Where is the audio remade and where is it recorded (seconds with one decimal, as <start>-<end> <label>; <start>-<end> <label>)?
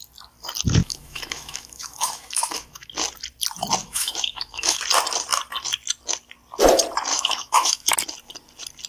0.0-0.8 recorded; 0.8-2.9 remade; 2.9-3.8 recorded; 3.8-4.8 remade; 4.8-7.1 recorded; 7.1-7.9 remade; 7.9-8.9 recorded